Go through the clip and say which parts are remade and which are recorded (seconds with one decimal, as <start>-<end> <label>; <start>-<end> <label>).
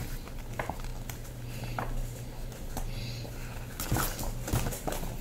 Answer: 0.0-5.2 recorded